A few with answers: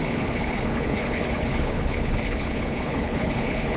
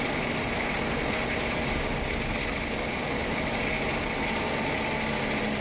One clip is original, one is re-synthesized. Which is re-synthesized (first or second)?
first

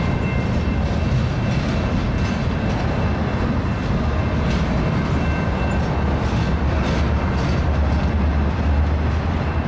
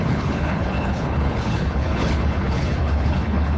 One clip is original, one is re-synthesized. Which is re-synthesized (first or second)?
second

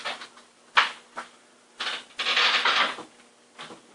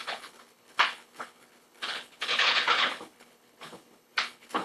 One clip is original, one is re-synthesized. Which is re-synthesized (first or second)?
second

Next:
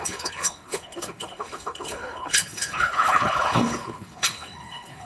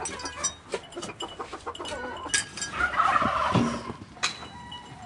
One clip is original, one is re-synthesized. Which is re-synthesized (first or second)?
first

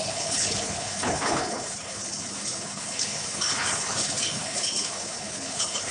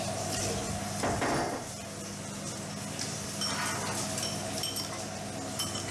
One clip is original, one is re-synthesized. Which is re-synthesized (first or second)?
first